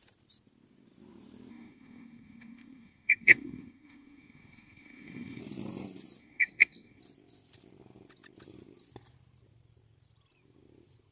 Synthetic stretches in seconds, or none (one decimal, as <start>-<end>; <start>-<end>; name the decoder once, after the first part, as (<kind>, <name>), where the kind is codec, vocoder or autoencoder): 1.5-5.4 (codec, SNAC); 6.2-7.0